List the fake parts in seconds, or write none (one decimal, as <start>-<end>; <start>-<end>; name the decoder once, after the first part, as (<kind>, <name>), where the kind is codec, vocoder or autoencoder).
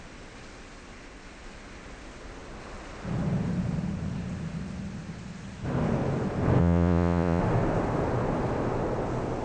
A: 6.6-7.4 (vocoder, Vocos)